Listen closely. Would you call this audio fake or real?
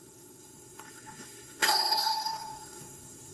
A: fake